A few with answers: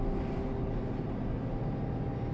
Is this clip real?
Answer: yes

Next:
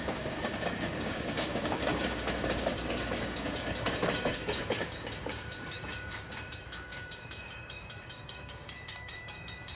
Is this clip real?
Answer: no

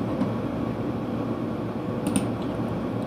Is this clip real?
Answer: yes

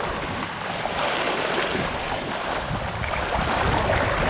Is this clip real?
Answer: yes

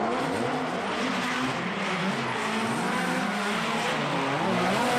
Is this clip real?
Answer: yes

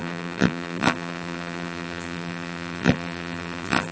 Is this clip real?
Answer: no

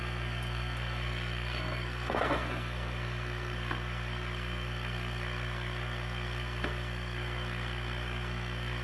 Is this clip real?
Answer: no